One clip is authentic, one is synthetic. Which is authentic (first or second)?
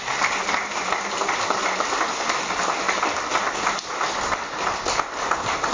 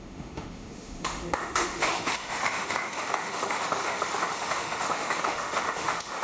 first